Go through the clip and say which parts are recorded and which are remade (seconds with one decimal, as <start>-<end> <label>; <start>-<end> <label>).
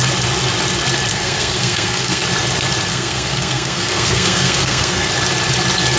0.0-1.1 recorded; 1.1-2.2 remade; 2.2-2.9 recorded; 2.9-5.1 remade; 5.1-6.0 recorded